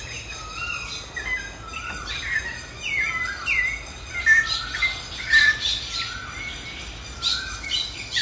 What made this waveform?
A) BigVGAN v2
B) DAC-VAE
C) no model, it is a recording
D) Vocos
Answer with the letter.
C